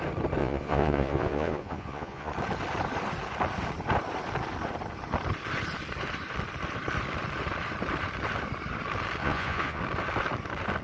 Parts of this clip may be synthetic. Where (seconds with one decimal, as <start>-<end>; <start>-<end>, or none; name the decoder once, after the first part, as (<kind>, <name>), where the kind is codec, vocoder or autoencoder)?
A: 0.4-2.3 (vocoder, Vocos); 9.2-9.8